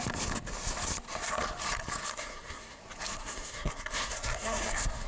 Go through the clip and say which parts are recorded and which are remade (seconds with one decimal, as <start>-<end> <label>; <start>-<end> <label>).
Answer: 0.0-2.1 recorded; 2.1-2.8 remade; 2.8-3.2 recorded; 3.2-5.1 remade